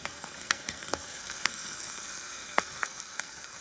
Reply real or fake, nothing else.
fake